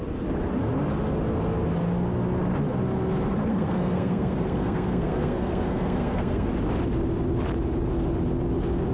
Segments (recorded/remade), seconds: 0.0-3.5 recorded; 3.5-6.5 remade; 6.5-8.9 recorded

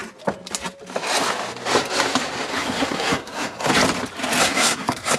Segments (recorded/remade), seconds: 0.0-2.5 recorded; 2.5-3.7 remade; 3.7-4.4 recorded; 4.4-5.2 remade

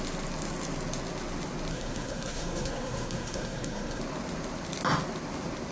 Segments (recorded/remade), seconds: 0.0-1.7 recorded; 1.7-4.0 remade; 4.0-5.7 recorded

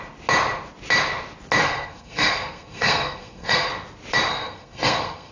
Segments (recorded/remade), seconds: 0.0-1.6 recorded; 1.6-3.7 remade; 3.7-4.3 recorded; 4.3-5.3 remade

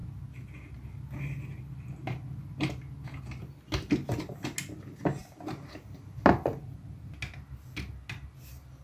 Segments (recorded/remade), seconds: 0.0-8.8 recorded

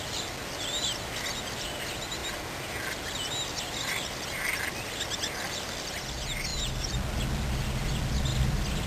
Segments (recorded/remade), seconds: 0.0-8.9 recorded